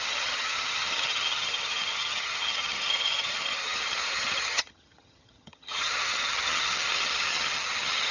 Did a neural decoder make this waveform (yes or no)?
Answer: yes